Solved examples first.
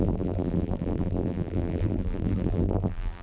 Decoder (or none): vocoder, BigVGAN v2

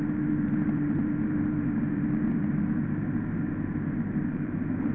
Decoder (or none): vocoder, BigVGAN v2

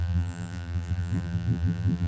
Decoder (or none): vocoder, BigVGAN v2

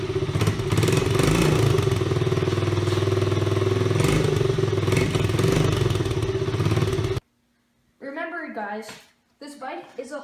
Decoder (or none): none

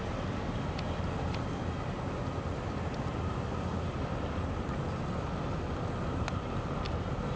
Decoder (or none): none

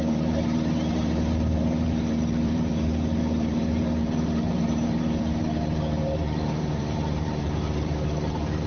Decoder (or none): vocoder, BigVGAN v2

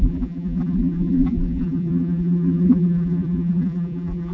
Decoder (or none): vocoder, BigVGAN v2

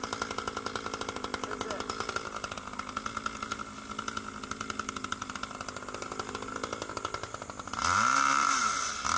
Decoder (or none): none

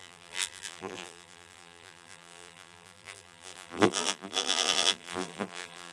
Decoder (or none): vocoder, BigVGAN v2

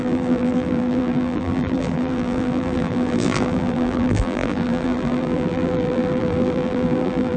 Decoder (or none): vocoder, BigVGAN v2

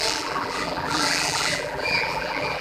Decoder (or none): vocoder, BigVGAN v2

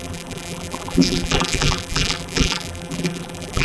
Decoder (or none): vocoder, BigVGAN v2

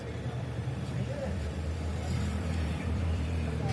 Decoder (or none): vocoder, BigVGAN v2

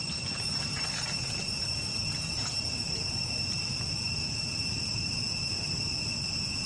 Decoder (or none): vocoder, BigVGAN v2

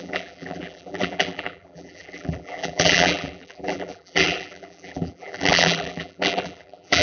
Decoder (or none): vocoder, BigVGAN v2